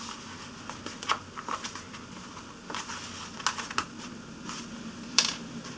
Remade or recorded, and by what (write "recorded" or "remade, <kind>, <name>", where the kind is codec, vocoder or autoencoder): recorded